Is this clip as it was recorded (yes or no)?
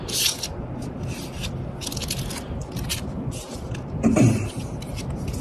yes